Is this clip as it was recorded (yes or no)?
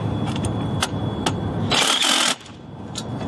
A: yes